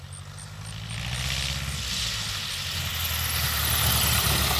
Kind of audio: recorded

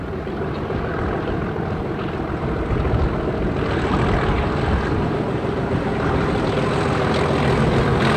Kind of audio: recorded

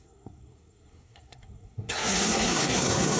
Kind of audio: remade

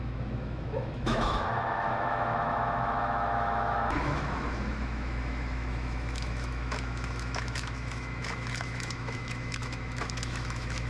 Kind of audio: remade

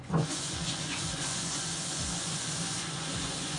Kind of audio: remade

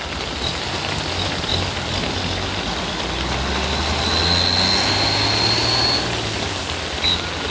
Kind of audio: recorded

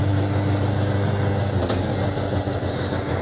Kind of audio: recorded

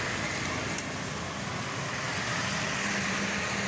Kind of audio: recorded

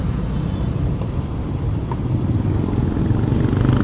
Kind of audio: recorded